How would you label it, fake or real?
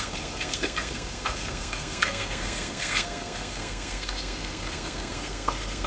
fake